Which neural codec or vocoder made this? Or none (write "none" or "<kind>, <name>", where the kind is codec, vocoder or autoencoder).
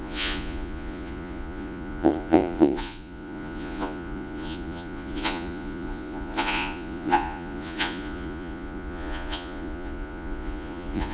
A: vocoder, Vocos